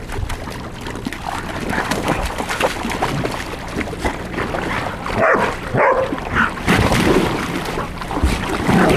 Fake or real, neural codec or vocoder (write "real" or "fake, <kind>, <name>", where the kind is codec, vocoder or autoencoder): fake, vocoder, BigVGAN v2